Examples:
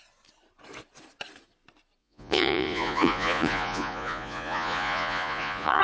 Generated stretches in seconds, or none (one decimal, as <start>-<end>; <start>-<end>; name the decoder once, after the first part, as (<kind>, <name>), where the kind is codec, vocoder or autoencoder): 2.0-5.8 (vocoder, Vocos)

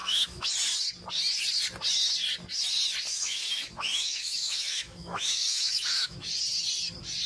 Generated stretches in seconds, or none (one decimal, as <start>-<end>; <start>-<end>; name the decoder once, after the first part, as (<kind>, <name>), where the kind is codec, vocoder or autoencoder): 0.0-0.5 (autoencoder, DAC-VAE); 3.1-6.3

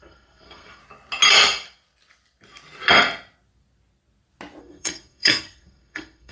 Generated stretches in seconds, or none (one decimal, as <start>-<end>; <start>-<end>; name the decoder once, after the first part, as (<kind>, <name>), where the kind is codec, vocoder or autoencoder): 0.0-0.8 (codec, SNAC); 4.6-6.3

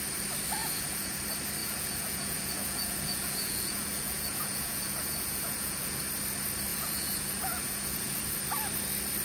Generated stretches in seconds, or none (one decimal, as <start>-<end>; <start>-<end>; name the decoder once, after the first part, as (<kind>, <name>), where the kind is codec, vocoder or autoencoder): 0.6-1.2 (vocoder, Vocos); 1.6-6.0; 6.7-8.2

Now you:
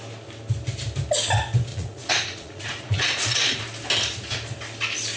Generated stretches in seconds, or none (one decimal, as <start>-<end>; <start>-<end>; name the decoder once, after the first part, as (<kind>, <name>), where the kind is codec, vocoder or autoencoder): 1.7-3.4 (vocoder, Vocos)